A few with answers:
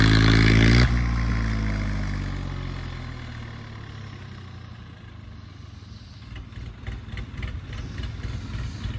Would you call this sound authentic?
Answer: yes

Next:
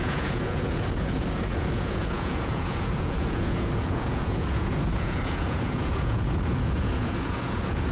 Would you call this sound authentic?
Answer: no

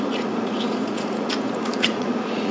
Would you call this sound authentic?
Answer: no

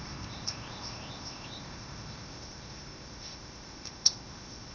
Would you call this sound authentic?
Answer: no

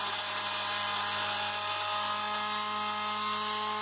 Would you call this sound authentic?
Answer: yes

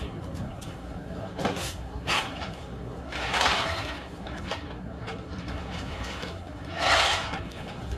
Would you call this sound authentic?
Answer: no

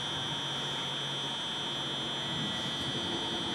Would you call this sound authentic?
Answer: yes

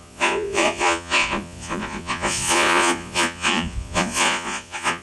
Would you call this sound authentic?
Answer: no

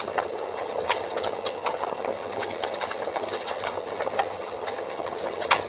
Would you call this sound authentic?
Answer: no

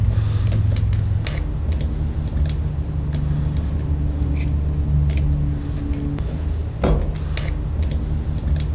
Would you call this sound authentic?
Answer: yes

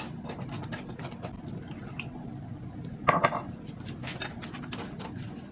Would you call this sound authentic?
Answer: yes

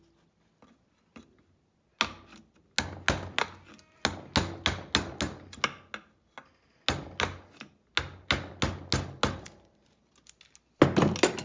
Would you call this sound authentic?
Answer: yes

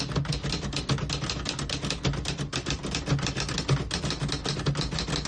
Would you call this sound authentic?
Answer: yes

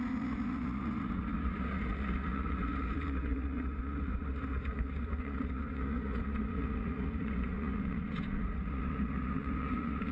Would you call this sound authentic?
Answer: no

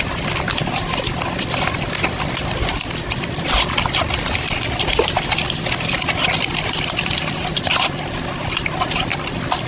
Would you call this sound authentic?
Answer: yes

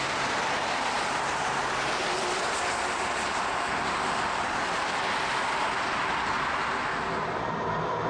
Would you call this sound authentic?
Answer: yes